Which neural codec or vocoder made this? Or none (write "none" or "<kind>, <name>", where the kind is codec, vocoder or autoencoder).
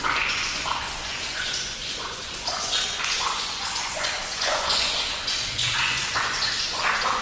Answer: vocoder, Vocos